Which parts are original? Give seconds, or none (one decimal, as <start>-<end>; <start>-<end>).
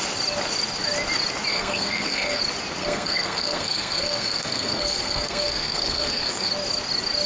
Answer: 0.0-1.5; 2.4-2.8; 6.5-7.3